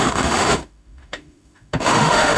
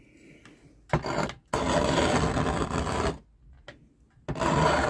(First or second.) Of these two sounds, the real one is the second